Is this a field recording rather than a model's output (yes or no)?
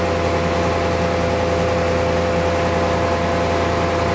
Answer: yes